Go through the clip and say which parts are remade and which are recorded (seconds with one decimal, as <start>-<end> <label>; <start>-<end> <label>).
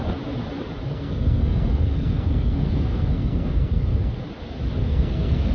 0.0-0.9 recorded; 0.9-4.2 remade; 4.2-4.8 recorded; 4.8-5.5 remade